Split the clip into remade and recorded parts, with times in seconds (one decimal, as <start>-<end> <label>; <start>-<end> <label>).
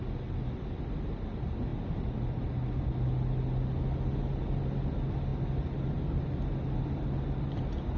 0.0-8.0 recorded